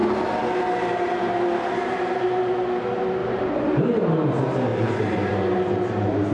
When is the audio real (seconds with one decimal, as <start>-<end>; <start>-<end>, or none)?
0.0-3.2; 3.8-4.7; 5.3-6.3